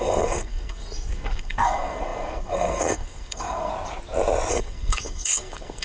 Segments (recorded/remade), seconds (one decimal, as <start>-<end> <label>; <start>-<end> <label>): 0.0-3.7 remade; 3.7-4.5 recorded; 4.5-5.8 remade